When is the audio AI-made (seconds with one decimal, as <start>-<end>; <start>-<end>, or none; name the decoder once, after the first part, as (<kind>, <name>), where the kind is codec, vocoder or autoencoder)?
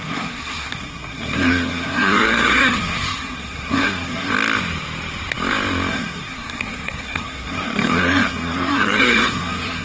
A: 0.0-4.3 (codec, SNAC); 5.9-9.8